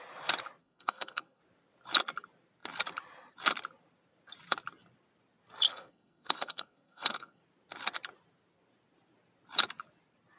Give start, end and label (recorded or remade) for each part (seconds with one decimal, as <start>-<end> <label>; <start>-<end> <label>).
0.0-0.6 recorded; 0.6-1.4 remade; 1.4-5.7 recorded; 5.7-7.4 remade; 7.4-10.4 recorded